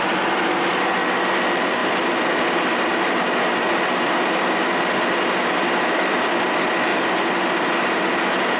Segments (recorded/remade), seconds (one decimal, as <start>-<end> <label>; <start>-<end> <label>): 0.0-8.6 recorded